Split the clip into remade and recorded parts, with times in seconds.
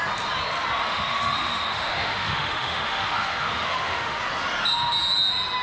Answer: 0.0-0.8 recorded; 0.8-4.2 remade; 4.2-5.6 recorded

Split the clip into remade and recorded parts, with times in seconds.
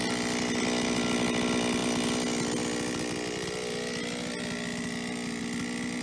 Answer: 0.0-6.0 recorded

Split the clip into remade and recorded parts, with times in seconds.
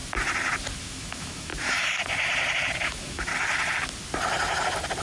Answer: 0.0-0.8 recorded; 0.8-1.5 remade; 1.5-2.8 recorded; 2.8-3.3 remade; 3.3-5.0 recorded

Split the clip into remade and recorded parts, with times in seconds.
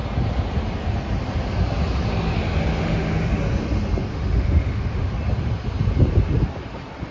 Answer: 0.0-2.7 recorded; 2.7-3.4 remade; 3.4-4.1 recorded; 4.1-5.1 remade; 5.1-7.1 recorded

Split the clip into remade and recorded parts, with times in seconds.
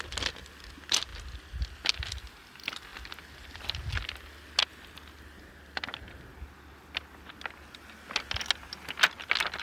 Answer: 0.0-9.6 recorded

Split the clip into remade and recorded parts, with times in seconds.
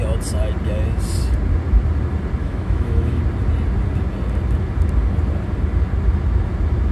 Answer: 0.0-2.4 recorded; 2.4-3.2 remade; 3.2-6.9 recorded